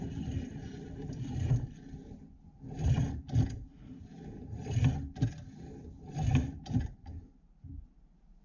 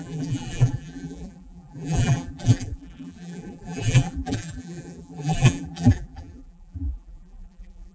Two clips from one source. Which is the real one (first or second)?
first